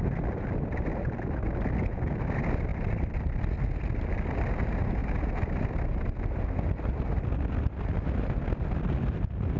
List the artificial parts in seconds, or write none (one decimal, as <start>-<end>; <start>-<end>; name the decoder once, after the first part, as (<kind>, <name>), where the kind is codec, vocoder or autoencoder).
none